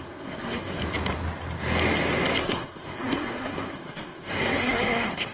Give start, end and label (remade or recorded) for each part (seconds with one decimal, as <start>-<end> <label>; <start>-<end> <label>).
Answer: 0.0-0.8 remade; 0.8-2.4 recorded; 2.4-5.3 remade